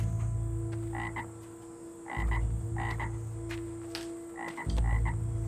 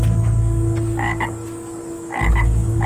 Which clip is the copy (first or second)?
second